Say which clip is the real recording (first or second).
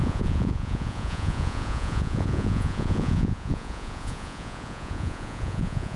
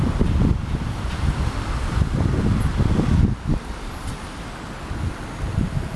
second